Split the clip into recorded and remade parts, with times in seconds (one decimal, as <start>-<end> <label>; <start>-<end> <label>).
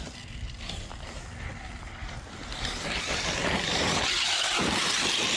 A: 0.0-5.4 recorded